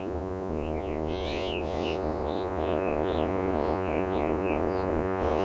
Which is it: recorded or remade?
remade